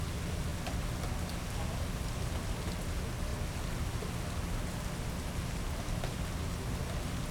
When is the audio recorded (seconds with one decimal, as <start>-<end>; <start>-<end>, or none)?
0.0-7.3